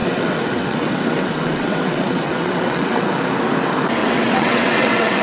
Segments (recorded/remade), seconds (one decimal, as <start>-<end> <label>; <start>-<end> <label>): 0.0-3.1 remade; 3.1-4.0 recorded; 4.0-5.2 remade